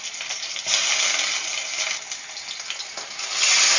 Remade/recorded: recorded